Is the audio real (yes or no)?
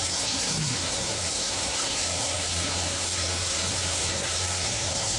no